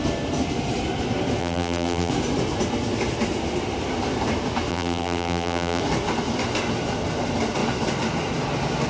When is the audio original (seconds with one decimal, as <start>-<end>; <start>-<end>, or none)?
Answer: 0.0-1.4; 2.1-4.7; 5.8-8.9

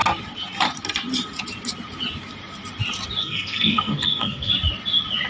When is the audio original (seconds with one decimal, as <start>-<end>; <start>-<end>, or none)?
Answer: 0.0-3.2; 4.5-5.3